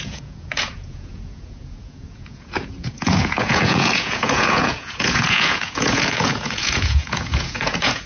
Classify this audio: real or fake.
fake